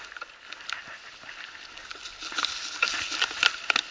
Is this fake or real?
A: real